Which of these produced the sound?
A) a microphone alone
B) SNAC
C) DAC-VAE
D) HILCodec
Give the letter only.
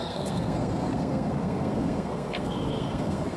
B